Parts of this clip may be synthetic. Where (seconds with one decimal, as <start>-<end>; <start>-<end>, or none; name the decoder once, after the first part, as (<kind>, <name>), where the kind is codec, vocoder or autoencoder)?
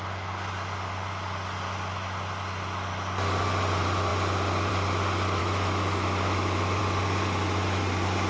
5.4-6.8 (autoencoder, DAC-VAE)